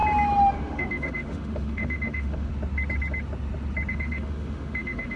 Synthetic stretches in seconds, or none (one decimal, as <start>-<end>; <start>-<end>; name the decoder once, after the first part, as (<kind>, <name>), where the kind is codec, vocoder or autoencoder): 0.5-2.5 (autoencoder, DAC-VAE); 3.9-5.2